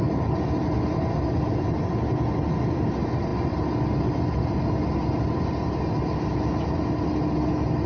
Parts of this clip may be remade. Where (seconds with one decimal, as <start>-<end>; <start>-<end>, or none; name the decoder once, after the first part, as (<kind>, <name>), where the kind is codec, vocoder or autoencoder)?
none